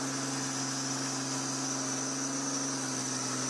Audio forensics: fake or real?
real